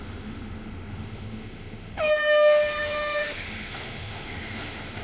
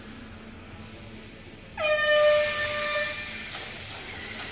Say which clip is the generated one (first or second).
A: first